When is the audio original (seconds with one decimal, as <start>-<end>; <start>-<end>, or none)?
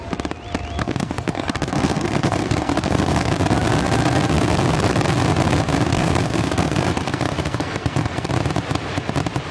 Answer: 0.0-0.8; 3.3-5.9; 8.3-9.5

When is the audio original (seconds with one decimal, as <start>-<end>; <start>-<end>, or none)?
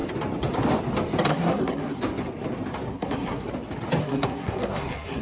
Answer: 0.0-1.3; 2.0-2.9; 3.5-4.0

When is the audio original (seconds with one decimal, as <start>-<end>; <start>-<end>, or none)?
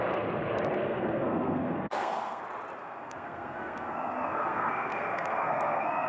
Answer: 0.0-0.8; 2.4-2.8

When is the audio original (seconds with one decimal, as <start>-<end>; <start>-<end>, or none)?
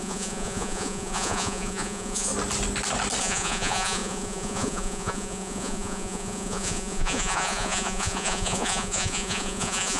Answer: 2.3-3.2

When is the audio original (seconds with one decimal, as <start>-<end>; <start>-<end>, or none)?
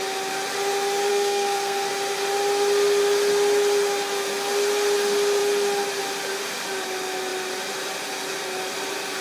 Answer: 0.0-1.1; 1.9-9.2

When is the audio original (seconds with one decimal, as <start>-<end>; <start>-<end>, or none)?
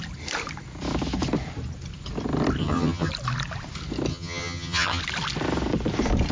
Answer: 0.0-2.6; 3.1-4.1; 5.0-6.3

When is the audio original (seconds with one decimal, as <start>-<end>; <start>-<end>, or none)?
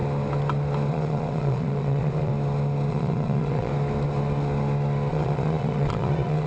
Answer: 0.0-0.9; 2.3-2.9; 3.7-5.1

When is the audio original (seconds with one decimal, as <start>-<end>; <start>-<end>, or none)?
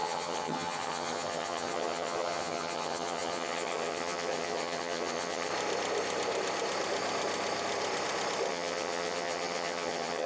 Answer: 5.5-8.5